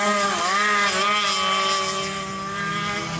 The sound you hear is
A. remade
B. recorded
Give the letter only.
B